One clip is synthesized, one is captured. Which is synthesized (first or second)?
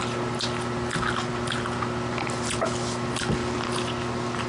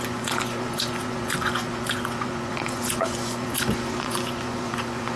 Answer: second